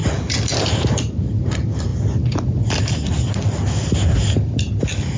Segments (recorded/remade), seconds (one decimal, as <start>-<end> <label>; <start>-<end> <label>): 0.0-5.2 recorded